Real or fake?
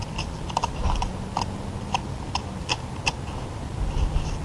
real